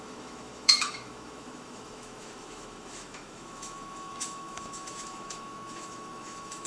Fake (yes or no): yes